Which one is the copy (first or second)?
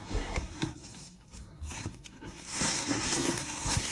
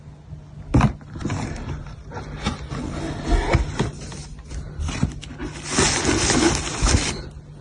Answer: first